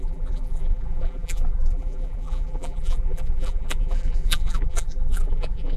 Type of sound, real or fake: fake